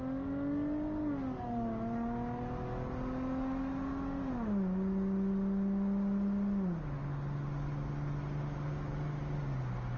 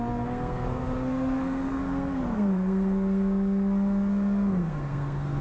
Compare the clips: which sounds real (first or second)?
first